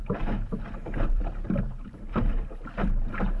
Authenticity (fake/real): fake